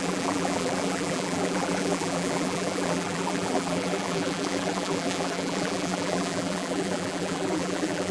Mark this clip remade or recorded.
remade